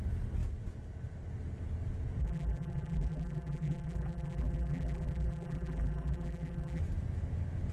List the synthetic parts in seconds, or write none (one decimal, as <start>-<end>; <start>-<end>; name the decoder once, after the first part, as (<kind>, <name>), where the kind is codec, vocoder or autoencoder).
2.2-6.8 (vocoder, BigVGAN v2)